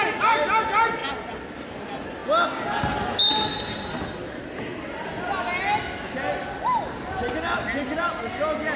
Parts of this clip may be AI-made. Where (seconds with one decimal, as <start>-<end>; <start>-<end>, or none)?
none